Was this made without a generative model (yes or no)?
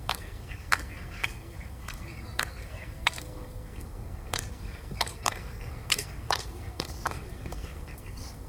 no